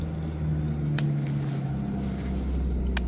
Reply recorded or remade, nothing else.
recorded